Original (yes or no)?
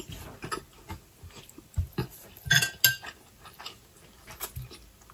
yes